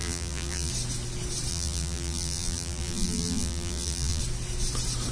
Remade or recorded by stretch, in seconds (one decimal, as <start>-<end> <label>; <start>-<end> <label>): 0.0-0.7 remade; 0.7-1.5 recorded; 1.5-4.2 remade; 4.2-5.1 recorded